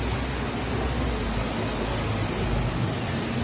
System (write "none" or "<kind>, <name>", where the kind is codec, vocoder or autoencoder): none